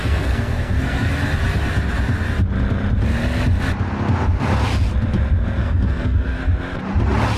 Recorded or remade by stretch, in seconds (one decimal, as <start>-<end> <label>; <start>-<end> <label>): 0.0-1.1 remade; 1.1-5.6 recorded; 5.6-6.4 remade; 6.4-7.4 recorded